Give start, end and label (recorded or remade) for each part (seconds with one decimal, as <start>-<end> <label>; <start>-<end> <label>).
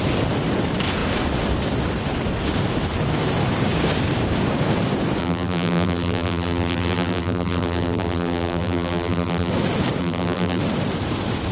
0.0-5.2 recorded; 5.2-9.5 remade; 9.5-10.0 recorded; 10.0-10.6 remade; 10.6-11.5 recorded